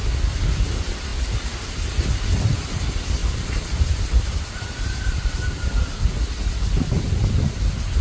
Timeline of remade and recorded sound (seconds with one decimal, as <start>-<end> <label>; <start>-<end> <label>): 0.0-1.1 recorded; 1.1-2.0 remade; 2.0-3.2 recorded; 3.2-6.0 remade; 6.0-8.0 recorded